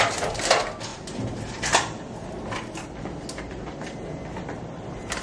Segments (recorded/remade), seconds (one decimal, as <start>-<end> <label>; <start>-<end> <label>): 0.0-5.2 recorded